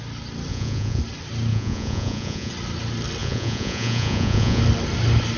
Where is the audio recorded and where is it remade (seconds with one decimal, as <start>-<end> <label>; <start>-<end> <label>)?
0.0-0.5 recorded; 0.5-1.0 remade; 1.0-1.5 recorded; 1.5-2.5 remade; 2.5-3.2 recorded; 3.2-4.6 remade; 4.6-5.4 recorded